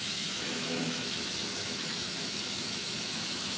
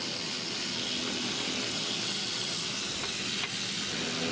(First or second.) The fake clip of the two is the first